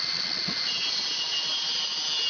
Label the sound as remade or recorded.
recorded